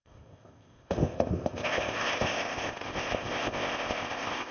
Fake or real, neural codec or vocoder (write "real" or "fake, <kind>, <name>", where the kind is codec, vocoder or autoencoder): fake, codec, ZipCodec